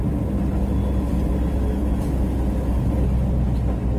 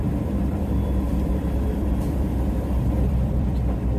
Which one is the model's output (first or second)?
second